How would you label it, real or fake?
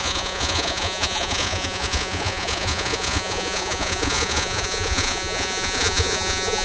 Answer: fake